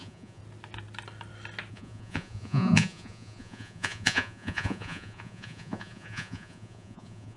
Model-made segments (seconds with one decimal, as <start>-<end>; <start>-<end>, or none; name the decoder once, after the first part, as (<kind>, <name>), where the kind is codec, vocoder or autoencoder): 0.0-0.4 (vocoder, Vocos); 1.7-7.4